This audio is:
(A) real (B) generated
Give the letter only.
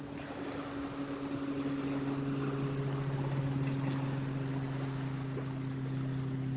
A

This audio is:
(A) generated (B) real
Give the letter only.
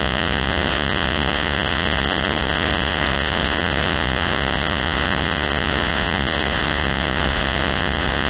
A